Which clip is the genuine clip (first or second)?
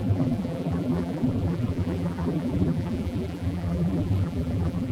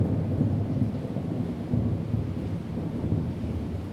second